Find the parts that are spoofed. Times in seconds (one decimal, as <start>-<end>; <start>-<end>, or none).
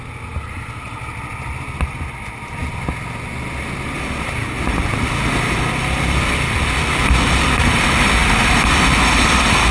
none